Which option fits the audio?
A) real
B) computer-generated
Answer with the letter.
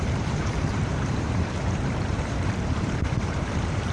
B